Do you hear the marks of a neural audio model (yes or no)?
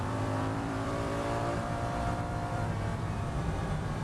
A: yes